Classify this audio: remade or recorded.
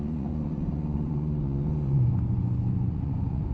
remade